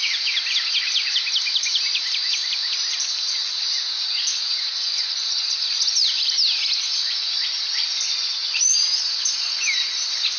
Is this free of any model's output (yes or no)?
no